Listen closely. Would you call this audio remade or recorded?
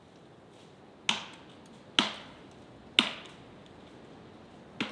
recorded